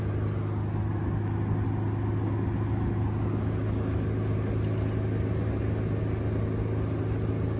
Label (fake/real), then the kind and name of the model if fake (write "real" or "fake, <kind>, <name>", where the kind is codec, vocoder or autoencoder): real